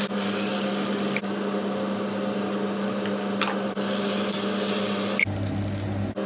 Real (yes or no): yes